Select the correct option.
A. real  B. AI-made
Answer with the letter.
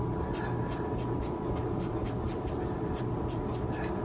A